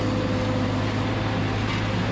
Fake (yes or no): no